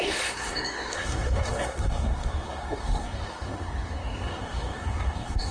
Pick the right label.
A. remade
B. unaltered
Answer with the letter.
A